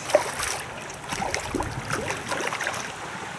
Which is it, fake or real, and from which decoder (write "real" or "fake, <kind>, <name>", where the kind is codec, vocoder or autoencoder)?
fake, vocoder, BigVGAN v2